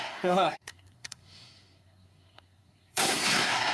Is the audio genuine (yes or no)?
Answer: no